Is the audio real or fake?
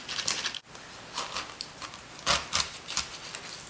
real